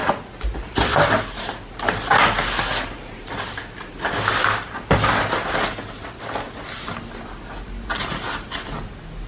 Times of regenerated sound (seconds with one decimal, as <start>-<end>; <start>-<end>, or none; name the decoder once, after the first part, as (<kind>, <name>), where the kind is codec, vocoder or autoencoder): none